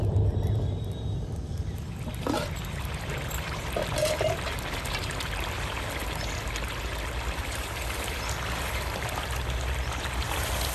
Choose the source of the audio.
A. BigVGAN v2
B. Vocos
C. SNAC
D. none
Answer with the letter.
D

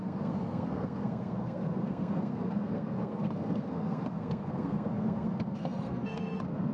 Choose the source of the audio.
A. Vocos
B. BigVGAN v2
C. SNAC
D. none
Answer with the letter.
C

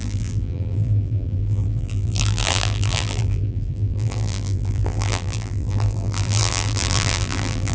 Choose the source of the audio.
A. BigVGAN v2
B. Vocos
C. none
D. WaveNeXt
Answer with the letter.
A